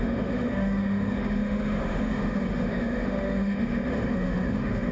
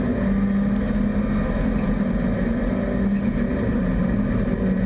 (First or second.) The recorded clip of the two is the second